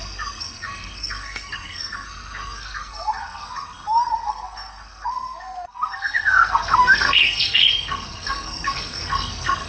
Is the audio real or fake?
fake